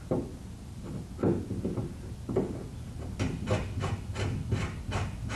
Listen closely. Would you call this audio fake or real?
real